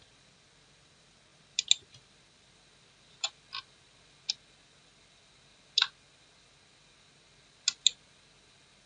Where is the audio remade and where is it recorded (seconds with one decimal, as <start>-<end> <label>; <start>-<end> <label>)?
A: 0.0-8.9 recorded